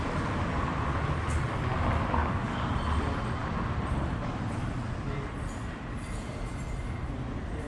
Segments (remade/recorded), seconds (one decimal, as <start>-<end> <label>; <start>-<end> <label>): 0.0-2.2 recorded; 2.2-2.7 remade; 2.7-7.7 recorded